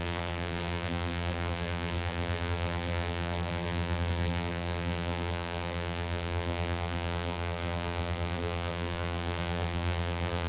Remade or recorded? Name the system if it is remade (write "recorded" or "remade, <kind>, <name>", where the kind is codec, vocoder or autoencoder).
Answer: remade, vocoder, BigVGAN v2